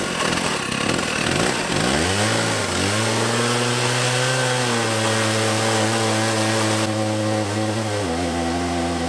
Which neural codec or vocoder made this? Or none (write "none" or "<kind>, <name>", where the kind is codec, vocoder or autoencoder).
none